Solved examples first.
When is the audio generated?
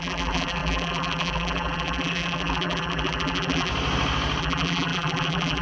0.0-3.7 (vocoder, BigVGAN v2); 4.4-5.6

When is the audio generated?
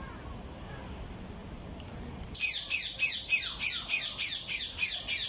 none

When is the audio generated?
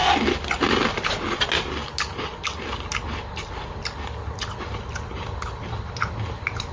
none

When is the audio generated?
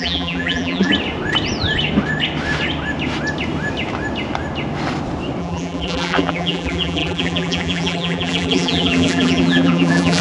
0.0-0.9 (vocoder, BigVGAN v2); 5.4-10.2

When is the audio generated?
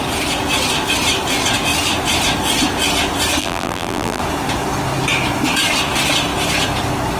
3.4-4.2 (vocoder, BigVGAN v2)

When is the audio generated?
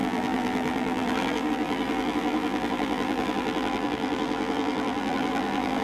0.0-5.8 (vocoder, BigVGAN v2)